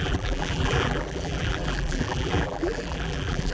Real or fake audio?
fake